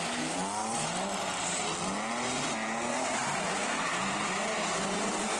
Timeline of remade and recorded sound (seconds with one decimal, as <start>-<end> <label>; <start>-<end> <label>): 0.0-0.6 recorded; 0.6-1.7 remade; 1.7-2.9 recorded; 2.9-4.3 remade; 4.3-5.4 recorded